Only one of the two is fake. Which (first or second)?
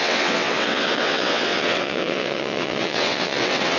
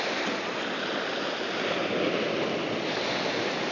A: first